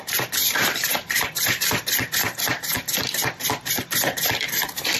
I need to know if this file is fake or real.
fake